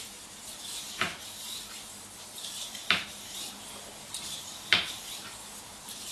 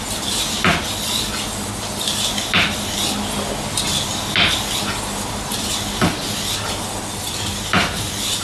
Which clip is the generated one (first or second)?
first